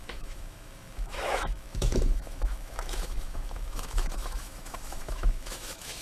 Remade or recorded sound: remade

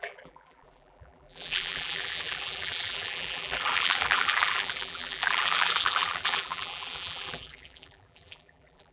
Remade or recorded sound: remade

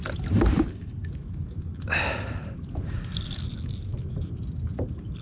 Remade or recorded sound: recorded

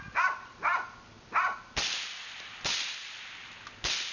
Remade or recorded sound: recorded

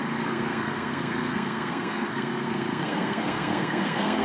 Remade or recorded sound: remade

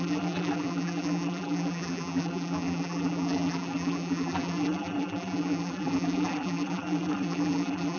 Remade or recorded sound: remade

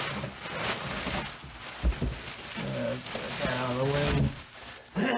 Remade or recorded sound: recorded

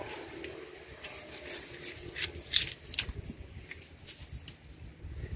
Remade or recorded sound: recorded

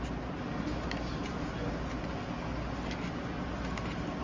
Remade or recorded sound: recorded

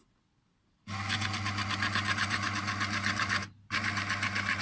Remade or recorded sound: recorded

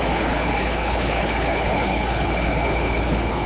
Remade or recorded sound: remade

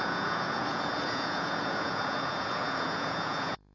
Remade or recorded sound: remade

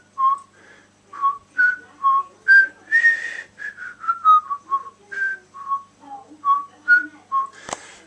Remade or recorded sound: recorded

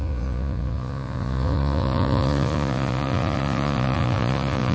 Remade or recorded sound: remade